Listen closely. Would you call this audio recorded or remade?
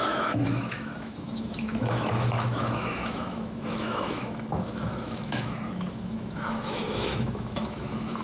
remade